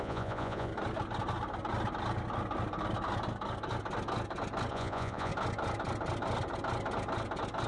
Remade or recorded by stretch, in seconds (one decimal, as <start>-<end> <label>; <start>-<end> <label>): 0.0-0.7 remade; 0.7-4.7 recorded; 4.7-5.3 remade; 5.3-7.7 recorded